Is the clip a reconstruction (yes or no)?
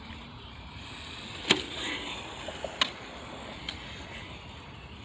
no